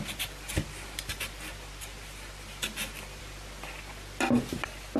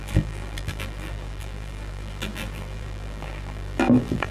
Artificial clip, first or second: second